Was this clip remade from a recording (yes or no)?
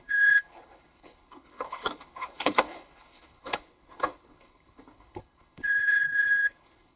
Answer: yes